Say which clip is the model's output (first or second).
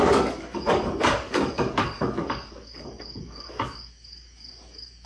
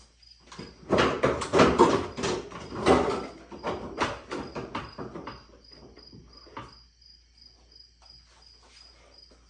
first